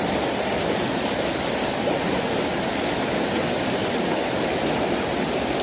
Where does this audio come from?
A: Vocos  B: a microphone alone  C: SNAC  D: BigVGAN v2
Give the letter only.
B